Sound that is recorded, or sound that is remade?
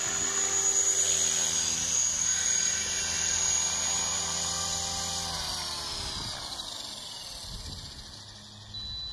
recorded